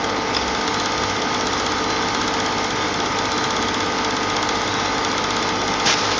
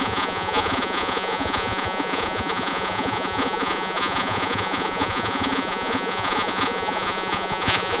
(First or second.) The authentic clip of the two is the first